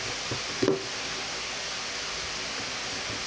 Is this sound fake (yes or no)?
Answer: no